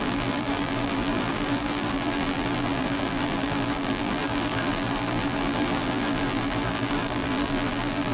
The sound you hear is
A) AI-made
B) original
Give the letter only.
A